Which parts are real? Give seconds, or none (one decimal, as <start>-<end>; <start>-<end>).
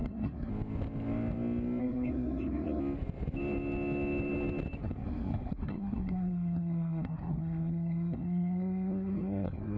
0.5-1.8; 2.8-4.8